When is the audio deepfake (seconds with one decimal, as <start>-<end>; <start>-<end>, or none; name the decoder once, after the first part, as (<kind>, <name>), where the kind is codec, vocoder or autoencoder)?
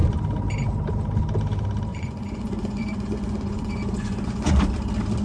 1.9-4.6 (vocoder, Vocos)